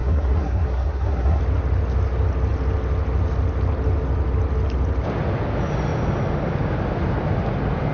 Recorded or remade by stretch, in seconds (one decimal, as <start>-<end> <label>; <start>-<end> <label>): 0.0-1.4 remade; 1.4-7.9 recorded